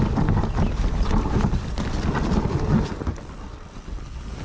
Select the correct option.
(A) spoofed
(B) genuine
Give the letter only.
B